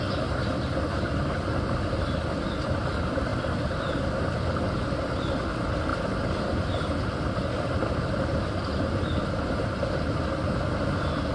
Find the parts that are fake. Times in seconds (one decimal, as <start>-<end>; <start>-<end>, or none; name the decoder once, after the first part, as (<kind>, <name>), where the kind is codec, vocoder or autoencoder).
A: none